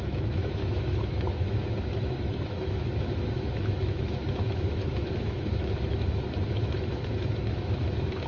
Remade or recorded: remade